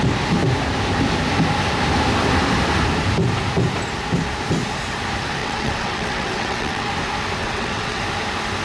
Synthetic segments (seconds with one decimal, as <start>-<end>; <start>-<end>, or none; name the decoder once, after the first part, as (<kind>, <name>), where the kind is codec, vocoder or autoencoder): 5.4-6.9 (vocoder, WaveNeXt); 7.4-8.0